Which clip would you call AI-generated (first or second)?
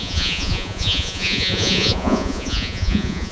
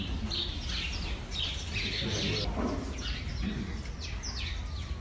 first